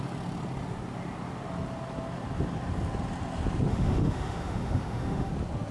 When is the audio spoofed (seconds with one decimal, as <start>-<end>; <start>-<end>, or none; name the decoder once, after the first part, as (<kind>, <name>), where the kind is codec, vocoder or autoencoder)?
3.7-5.3 (autoencoder, DAC-VAE)